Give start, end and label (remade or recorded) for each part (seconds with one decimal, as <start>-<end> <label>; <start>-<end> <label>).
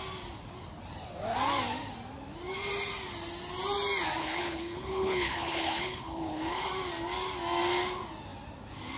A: 0.0-4.2 recorded; 4.2-6.7 remade; 6.7-9.0 recorded